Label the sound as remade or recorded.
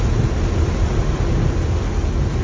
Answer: recorded